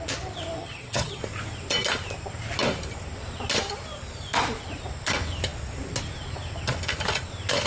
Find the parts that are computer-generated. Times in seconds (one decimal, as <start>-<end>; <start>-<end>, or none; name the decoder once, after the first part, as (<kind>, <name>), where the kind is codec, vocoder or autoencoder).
0.6-1.2 (vocoder, HiFi-GAN)